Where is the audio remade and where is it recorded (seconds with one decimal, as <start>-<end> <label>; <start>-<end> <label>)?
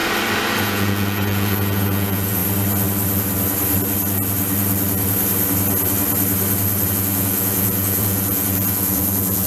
0.0-0.6 recorded; 0.6-2.4 remade; 2.4-6.9 recorded; 6.9-9.5 remade